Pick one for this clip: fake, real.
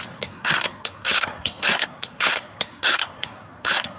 fake